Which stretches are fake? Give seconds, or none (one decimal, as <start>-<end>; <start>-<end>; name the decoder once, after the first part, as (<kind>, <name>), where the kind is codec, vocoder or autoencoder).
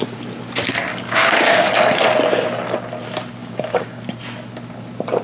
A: 0.9-1.7 (codec, DAC); 3.4-4.0